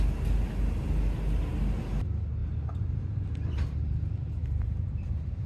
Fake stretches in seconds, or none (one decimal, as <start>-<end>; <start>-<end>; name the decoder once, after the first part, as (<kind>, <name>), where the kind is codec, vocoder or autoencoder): 2.4-3.8 (vocoder, BigVGAN v2); 4.4-5.5